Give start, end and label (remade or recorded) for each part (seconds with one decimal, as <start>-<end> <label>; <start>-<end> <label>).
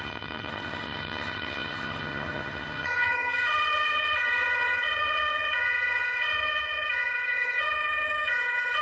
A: 0.0-8.8 remade